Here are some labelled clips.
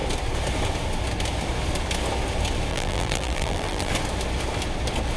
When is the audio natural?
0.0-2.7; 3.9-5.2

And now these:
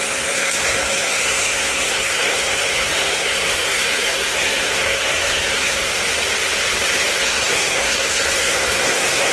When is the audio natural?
5.9-7.2